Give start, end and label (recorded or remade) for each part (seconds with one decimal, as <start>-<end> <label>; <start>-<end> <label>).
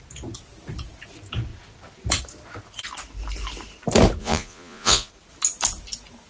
0.0-4.2 recorded; 4.2-5.1 remade; 5.1-6.3 recorded